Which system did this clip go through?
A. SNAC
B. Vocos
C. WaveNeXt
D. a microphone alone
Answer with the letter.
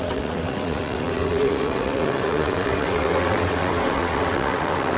C